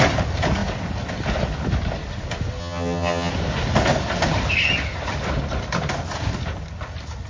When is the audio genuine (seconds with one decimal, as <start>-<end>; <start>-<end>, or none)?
0.0-2.6; 3.3-7.3